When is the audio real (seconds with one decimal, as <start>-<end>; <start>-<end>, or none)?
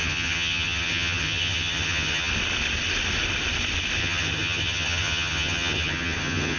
2.3-4.0